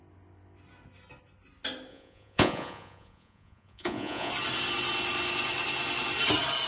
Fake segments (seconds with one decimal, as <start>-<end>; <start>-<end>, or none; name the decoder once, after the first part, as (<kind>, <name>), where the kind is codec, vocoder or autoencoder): 1.9-4.3 (vocoder, Vocos)